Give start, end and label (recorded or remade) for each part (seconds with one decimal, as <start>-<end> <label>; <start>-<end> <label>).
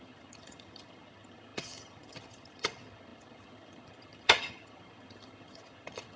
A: 0.0-6.2 remade